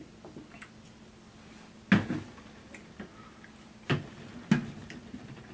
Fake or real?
real